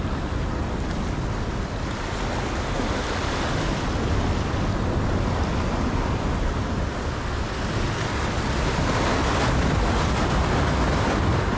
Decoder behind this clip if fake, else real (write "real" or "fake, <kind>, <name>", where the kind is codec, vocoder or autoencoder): real